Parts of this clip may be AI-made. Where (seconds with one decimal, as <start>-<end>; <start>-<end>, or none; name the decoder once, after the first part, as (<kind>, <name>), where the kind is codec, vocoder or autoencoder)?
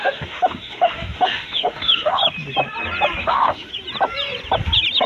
0.0-2.2 (autoencoder, DAC-VAE); 3.2-3.7